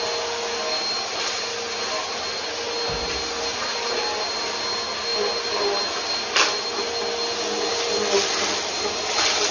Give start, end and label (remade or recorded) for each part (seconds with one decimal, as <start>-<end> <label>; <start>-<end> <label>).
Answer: 0.0-9.5 recorded